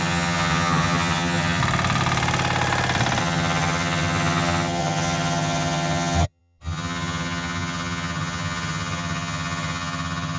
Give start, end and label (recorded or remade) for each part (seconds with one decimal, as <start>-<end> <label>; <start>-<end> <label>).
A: 0.0-1.6 remade; 1.6-3.2 recorded; 3.2-10.4 remade